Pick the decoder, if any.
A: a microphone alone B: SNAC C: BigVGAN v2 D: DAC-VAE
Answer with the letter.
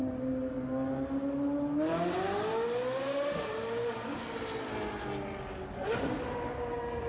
A